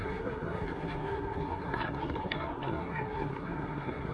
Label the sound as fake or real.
fake